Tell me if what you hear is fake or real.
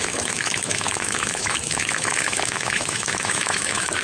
fake